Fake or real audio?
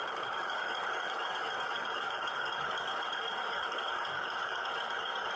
fake